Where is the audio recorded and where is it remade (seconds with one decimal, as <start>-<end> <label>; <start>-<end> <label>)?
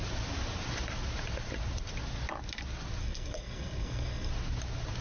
0.0-3.0 recorded; 3.0-4.3 remade; 4.3-5.0 recorded